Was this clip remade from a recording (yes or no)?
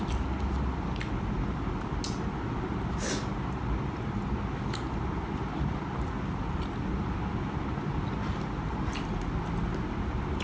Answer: no